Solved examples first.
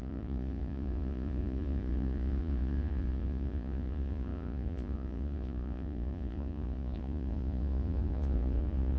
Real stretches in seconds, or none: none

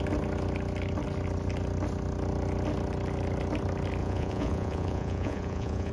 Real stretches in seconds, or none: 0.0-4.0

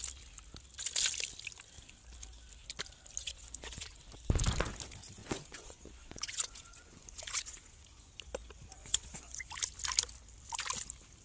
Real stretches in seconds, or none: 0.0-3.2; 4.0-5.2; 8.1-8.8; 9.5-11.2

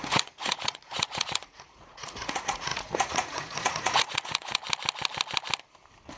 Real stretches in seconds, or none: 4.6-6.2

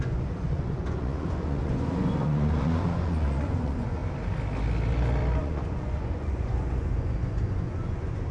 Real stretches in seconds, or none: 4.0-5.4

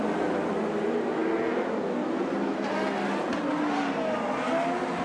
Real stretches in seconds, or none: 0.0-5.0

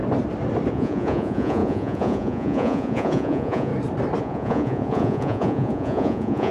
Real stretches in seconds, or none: 0.0-0.7; 3.7-4.2